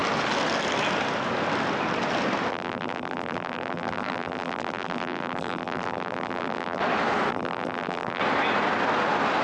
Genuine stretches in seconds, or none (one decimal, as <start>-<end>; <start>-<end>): 0.0-2.5; 6.8-7.3; 8.2-9.4